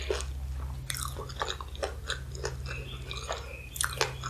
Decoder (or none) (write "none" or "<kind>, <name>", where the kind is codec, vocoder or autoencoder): none